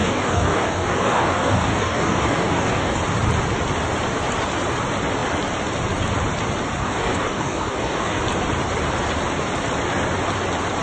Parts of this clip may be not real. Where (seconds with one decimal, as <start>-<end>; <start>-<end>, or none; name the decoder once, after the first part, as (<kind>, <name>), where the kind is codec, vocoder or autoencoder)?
0.0-3.0 (codec, DAC); 6.8-8.2

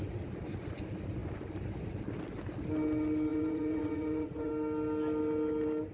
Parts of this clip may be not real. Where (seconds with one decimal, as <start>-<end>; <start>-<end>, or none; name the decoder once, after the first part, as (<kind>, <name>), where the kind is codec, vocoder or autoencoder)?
3.3-4.5 (vocoder, Vocos)

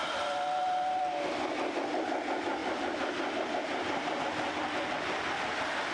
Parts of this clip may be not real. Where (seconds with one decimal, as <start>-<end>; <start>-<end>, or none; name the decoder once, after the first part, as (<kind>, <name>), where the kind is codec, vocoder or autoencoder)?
0.0-1.0 (vocoder, BigVGAN v2); 2.6-4.2

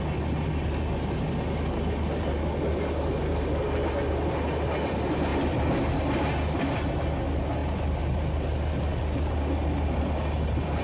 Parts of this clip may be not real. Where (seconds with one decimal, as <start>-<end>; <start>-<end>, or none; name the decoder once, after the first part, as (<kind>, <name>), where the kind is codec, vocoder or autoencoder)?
none

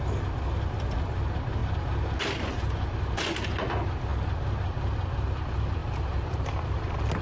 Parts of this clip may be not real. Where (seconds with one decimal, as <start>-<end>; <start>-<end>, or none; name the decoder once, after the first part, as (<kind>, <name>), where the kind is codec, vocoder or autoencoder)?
5.8-6.6 (vocoder, BigVGAN v2)